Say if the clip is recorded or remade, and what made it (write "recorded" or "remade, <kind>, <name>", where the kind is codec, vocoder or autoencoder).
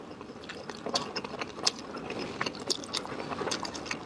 recorded